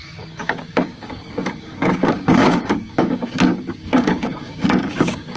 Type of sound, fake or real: fake